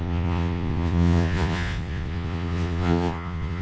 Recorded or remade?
remade